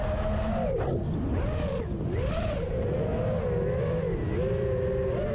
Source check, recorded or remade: recorded